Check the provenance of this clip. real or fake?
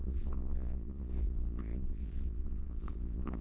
fake